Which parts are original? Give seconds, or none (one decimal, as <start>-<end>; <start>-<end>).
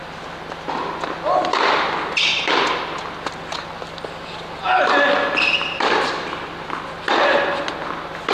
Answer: 0.0-8.3